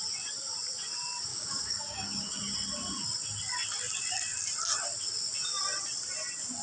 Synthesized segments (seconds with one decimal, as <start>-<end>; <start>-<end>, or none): 1.3-2.4